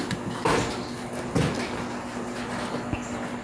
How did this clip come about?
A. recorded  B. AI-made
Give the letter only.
A